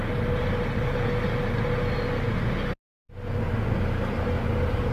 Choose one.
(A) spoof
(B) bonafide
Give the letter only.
B